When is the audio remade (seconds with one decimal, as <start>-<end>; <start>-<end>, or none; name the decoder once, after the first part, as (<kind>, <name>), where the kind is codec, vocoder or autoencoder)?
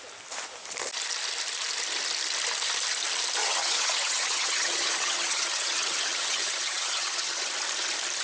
3.4-7.5 (vocoder, HiFi-GAN)